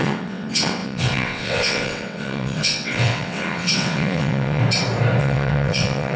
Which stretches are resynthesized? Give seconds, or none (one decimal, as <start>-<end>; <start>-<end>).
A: 0.0-4.6; 5.2-6.2